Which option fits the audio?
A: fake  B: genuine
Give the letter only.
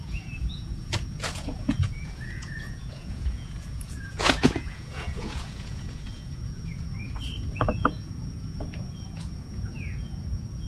A